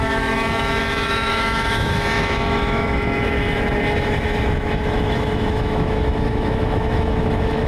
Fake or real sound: fake